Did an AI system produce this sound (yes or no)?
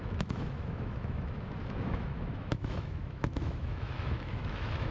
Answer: yes